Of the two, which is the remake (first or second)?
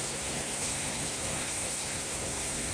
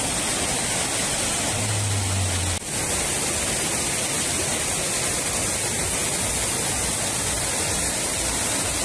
first